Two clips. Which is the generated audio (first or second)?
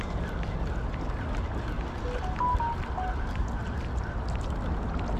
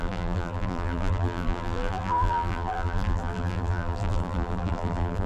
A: second